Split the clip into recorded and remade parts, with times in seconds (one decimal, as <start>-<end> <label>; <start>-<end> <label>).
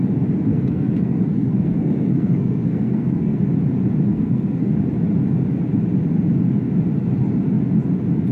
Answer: 0.0-0.5 recorded; 0.5-3.4 remade; 3.4-4.1 recorded; 4.1-4.7 remade; 4.7-8.3 recorded